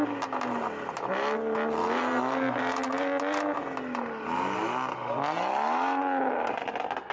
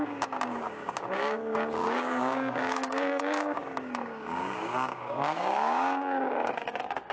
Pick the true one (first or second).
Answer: first